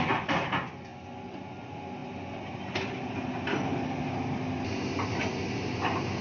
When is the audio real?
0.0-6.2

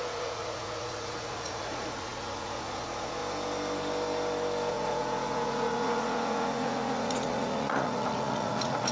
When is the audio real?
3.2-4.7

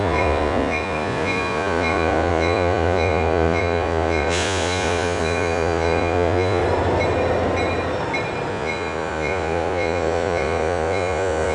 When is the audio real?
6.6-8.5

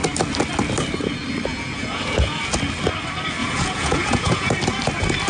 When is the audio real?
0.0-1.5; 2.4-3.4; 4.5-5.3

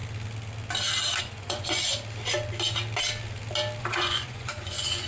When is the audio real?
0.0-1.2; 1.9-3.8

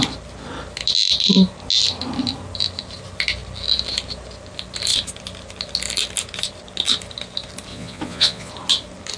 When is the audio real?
0.0-7.7; 8.5-9.2

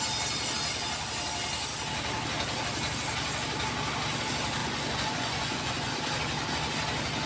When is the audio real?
0.0-4.6; 5.9-7.3

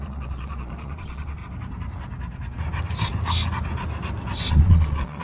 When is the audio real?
1.4-4.5